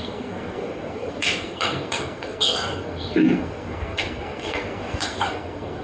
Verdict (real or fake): fake